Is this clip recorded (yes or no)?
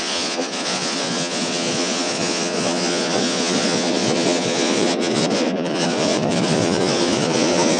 no